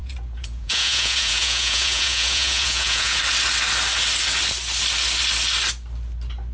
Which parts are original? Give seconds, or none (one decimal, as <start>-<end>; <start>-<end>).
3.2-6.5